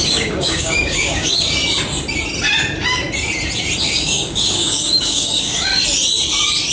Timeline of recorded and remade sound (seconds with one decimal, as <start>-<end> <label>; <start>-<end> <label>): 0.0-1.6 remade; 1.6-3.8 recorded; 3.8-5.7 remade; 5.7-6.7 recorded